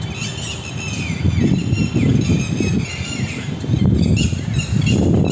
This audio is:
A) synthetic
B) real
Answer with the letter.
B